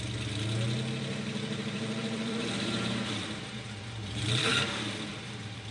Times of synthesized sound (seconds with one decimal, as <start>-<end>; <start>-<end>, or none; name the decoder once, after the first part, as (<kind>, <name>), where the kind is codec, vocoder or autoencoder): 1.1-4.5 (vocoder, BigVGAN v2); 5.1-5.7